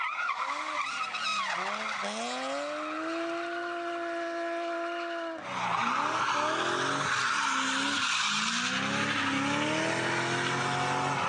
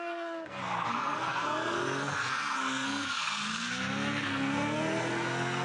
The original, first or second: first